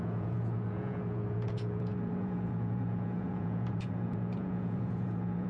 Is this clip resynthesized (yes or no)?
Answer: yes